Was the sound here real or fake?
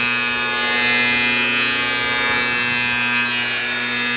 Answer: real